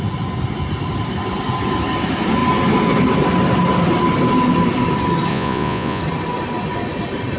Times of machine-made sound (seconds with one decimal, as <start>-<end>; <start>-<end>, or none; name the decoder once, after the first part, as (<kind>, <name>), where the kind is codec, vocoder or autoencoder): 5.3-6.0 (vocoder, Vocos)